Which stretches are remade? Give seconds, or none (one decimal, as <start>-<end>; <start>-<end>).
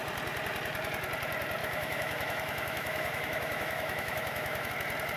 1.6-4.7